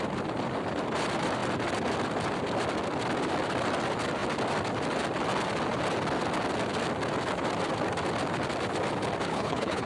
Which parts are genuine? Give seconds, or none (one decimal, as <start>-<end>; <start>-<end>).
0.0-9.3